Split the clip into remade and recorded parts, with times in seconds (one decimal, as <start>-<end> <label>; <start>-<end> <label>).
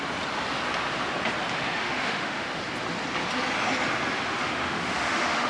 0.0-1.8 recorded; 1.8-2.6 remade; 2.6-4.4 recorded; 4.4-5.5 remade